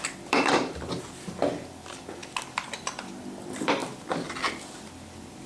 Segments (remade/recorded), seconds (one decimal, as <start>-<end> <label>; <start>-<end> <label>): 0.0-2.2 remade; 2.2-3.0 recorded; 3.0-5.5 remade